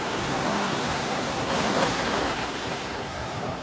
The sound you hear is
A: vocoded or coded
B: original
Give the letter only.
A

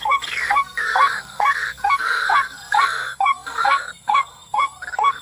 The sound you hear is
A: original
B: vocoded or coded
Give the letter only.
B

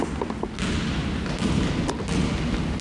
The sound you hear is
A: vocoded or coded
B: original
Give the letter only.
B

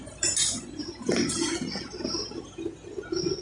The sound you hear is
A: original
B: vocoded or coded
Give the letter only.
A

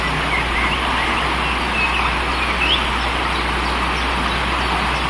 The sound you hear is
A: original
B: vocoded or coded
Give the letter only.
A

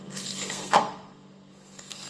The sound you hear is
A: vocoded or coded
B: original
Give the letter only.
A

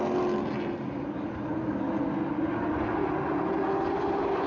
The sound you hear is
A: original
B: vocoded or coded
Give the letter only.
A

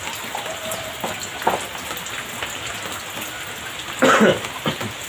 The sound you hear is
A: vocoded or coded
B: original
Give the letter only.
B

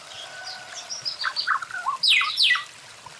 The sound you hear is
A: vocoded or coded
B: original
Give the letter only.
B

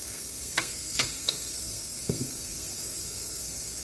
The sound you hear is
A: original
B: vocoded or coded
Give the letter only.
B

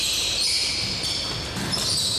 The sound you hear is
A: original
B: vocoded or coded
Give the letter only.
A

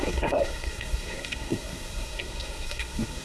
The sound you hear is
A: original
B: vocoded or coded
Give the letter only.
B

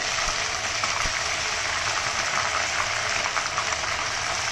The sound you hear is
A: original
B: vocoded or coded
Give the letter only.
A